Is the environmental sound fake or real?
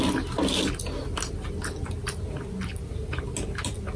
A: real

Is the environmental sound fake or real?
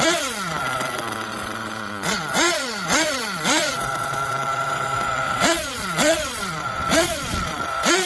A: fake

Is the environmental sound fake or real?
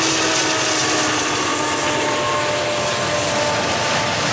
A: real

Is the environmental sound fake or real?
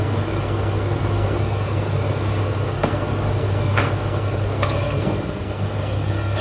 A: fake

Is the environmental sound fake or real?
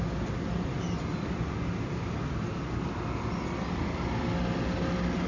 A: real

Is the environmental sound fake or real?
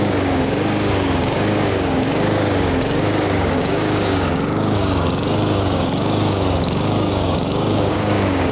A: fake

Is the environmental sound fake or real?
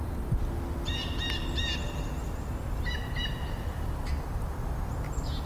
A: real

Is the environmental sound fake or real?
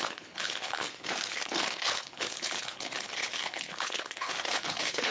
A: fake